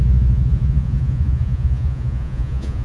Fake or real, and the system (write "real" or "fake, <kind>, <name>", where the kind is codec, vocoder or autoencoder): fake, vocoder, Vocos